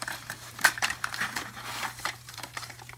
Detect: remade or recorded remade